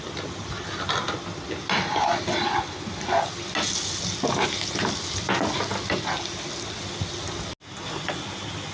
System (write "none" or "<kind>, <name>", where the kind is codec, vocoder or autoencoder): none